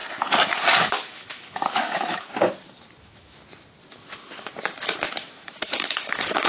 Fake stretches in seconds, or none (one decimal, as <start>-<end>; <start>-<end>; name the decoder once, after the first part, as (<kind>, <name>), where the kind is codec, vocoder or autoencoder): 0.9-2.3 (autoencoder, DAC-VAE); 3.0-3.4; 5.1-6.5

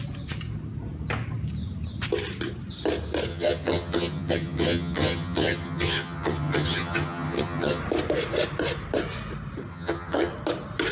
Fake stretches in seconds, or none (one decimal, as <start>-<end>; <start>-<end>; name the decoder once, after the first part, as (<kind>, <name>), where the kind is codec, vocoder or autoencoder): 3.3-7.8 (vocoder, HiFi-GAN); 9.7-10.3

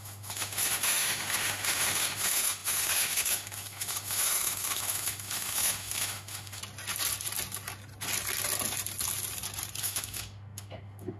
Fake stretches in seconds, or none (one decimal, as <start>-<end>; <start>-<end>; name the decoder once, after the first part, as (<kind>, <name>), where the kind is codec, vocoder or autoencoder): 0.0-6.6 (autoencoder, DAC-VAE); 9.8-11.2

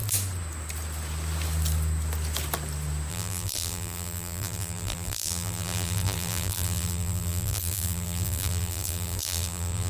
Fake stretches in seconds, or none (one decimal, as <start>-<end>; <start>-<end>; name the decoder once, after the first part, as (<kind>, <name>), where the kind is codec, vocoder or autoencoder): 3.1-9.9 (vocoder, BigVGAN v2)

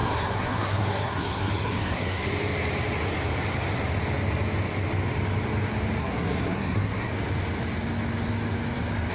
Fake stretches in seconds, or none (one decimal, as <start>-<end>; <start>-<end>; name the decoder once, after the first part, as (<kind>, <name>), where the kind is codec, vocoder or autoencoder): 0.0-2.2 (codec, SNAC); 6.0-7.1